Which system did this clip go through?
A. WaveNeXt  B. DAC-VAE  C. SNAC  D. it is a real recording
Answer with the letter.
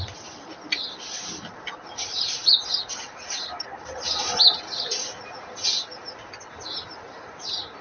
D